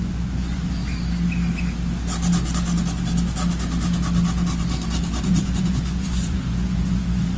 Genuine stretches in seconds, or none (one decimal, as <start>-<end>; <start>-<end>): 0.8-5.2

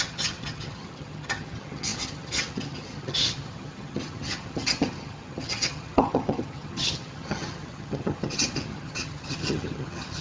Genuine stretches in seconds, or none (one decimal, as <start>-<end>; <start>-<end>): none

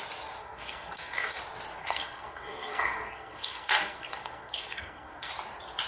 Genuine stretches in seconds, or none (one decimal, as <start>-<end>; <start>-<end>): 0.0-0.4; 1.4-1.8; 5.3-5.9

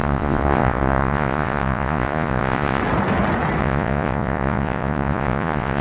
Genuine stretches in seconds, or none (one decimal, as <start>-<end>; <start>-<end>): 2.8-3.6

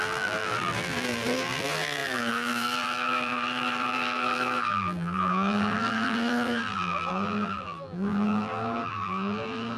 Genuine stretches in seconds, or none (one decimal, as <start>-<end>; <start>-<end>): none

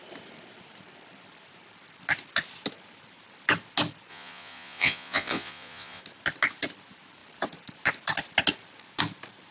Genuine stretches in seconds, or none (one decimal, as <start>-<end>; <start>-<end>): 0.0-4.1; 6.0-9.5

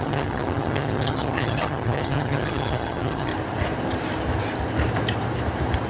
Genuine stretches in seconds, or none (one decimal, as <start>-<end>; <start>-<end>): 3.3-5.9